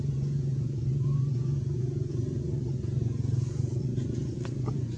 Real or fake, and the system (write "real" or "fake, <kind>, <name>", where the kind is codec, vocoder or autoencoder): fake, vocoder, Vocos